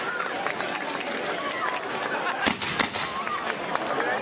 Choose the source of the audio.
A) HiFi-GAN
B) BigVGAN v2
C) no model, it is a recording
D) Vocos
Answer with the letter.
B